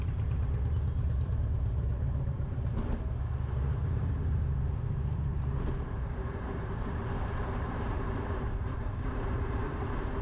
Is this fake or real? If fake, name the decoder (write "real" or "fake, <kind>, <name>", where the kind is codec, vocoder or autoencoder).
fake, vocoder, BigVGAN v2